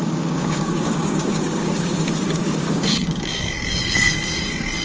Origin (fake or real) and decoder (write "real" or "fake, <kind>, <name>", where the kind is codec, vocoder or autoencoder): fake, codec, DAC